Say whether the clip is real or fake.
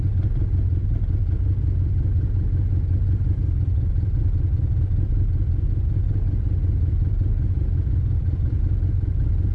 real